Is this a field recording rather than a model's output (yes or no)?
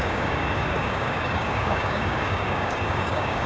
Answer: no